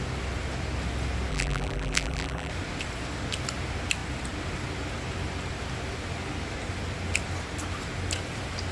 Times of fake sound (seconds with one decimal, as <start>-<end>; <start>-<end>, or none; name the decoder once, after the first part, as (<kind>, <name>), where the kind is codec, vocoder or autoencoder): 1.3-2.5 (vocoder, BigVGAN v2)